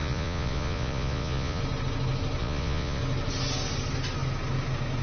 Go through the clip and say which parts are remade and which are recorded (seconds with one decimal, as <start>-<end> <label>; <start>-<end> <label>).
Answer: 0.0-1.6 remade; 1.6-2.4 recorded; 2.4-3.0 remade; 3.0-5.0 recorded